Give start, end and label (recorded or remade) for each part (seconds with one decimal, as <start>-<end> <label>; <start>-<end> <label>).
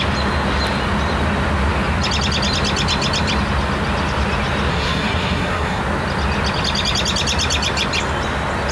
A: 0.0-4.7 recorded; 4.7-5.8 remade; 5.8-8.7 recorded